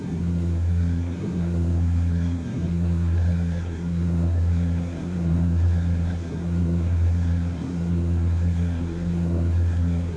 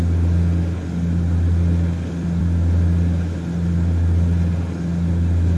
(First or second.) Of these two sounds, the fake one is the first